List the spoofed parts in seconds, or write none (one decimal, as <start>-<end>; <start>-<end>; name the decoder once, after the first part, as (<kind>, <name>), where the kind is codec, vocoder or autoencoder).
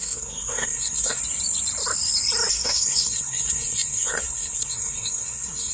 0.0-1.2 (codec, SNAC); 2.5-5.7